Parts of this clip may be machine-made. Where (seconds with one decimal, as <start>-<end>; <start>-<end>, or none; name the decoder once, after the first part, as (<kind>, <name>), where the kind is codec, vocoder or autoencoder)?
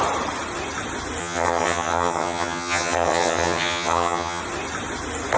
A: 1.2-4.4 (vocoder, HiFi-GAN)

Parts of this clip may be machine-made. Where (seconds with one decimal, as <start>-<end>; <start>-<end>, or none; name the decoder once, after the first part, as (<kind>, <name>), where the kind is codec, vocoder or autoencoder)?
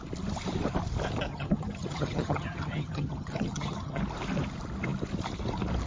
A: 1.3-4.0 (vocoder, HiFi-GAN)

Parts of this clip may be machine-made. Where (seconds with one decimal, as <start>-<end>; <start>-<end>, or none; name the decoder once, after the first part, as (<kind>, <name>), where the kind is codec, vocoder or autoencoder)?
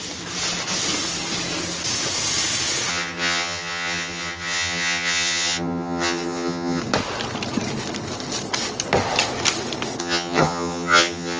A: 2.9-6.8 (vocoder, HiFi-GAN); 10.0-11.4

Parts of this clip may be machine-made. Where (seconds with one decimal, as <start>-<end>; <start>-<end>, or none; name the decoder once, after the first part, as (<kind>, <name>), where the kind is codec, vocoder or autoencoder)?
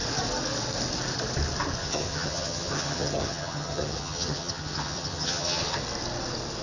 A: 1.8-5.8 (vocoder, HiFi-GAN)